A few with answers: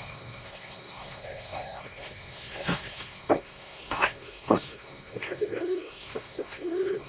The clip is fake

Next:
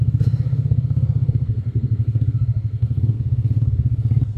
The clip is fake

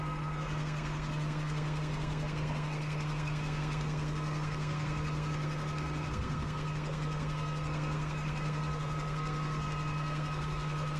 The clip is fake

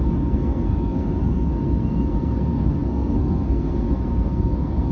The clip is fake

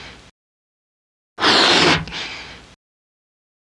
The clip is real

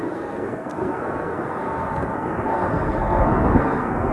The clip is fake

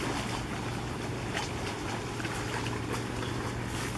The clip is real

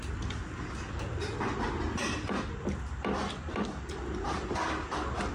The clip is real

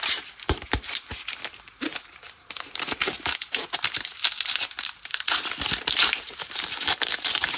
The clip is real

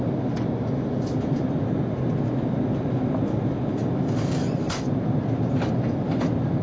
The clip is real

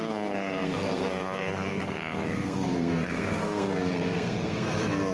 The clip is fake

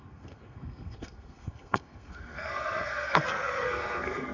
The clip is fake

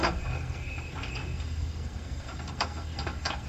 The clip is fake